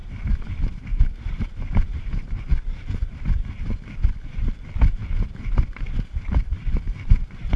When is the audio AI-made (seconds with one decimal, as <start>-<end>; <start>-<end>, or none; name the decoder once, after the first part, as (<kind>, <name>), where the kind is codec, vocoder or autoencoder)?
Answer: 0.6-2.5 (vocoder, BigVGAN v2); 7.1-7.6